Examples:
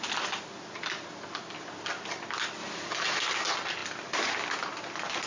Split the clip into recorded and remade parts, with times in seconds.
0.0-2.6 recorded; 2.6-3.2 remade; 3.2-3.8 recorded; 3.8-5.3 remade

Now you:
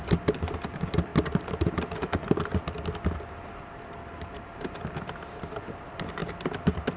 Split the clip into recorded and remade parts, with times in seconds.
0.0-1.1 remade; 1.1-3.3 recorded; 3.3-6.2 remade; 6.2-7.0 recorded

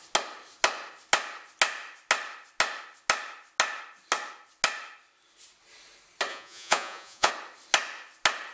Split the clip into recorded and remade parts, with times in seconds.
0.0-6.3 recorded; 6.3-7.3 remade; 7.3-8.5 recorded

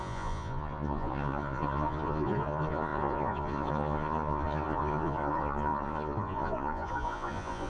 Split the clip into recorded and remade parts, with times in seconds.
0.0-7.7 remade